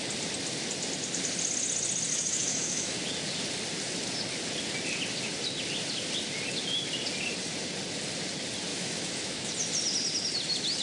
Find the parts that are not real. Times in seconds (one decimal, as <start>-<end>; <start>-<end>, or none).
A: 2.1-3.0; 8.7-9.5